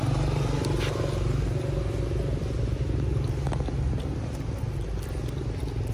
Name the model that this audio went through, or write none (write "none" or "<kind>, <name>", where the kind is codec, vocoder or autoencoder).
none